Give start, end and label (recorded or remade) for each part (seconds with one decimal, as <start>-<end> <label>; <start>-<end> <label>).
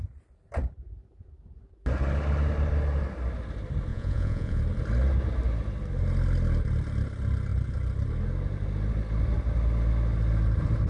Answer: 0.0-3.9 recorded; 3.9-4.6 remade; 4.6-10.9 recorded